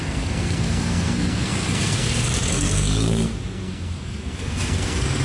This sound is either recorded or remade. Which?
remade